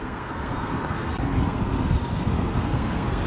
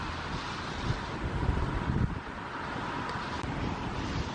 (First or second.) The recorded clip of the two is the second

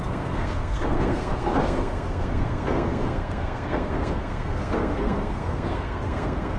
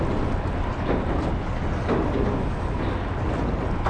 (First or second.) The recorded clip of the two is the second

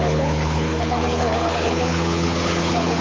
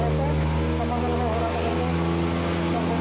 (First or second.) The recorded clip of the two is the second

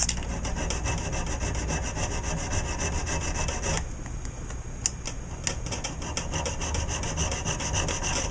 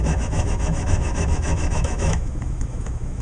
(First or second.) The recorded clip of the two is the first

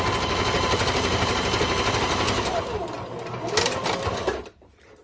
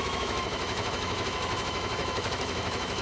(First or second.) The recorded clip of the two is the first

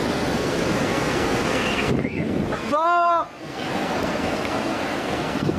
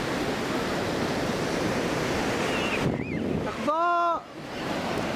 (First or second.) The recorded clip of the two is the second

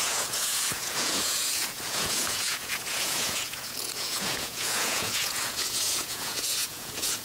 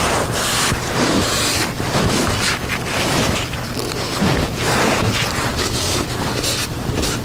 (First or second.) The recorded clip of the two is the second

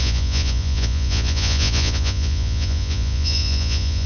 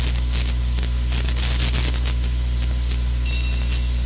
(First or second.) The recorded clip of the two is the second